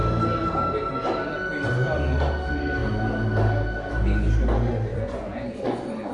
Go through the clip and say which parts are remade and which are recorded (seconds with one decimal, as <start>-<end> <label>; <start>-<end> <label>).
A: 0.0-4.9 recorded; 4.9-6.1 remade